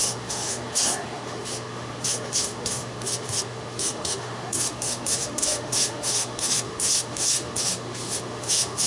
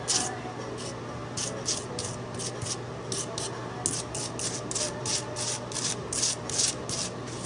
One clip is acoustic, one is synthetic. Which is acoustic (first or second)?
second